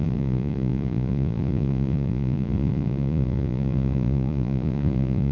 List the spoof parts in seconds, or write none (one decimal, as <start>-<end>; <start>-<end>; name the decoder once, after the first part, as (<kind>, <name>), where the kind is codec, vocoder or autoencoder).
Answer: 0.0-5.3 (vocoder, Vocos)